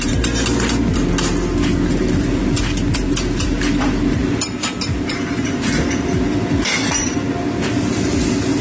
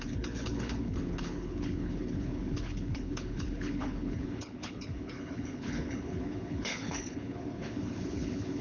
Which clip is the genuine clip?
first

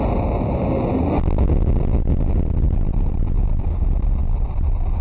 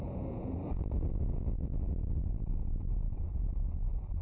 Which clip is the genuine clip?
first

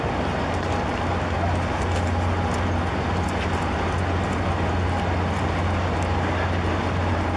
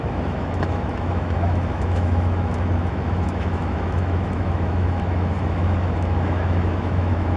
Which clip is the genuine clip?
first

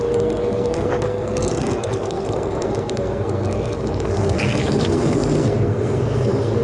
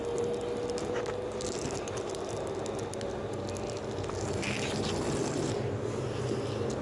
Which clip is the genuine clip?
second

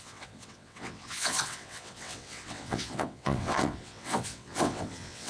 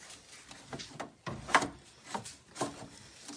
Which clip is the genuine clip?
second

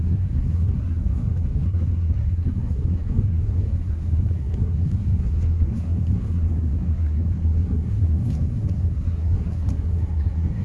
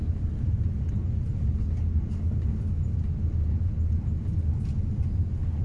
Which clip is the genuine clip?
second